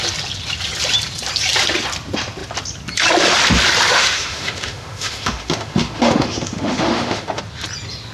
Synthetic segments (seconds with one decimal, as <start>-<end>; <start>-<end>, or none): 3.9-7.4